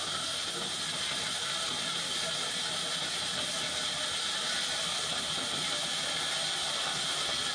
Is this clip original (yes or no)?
yes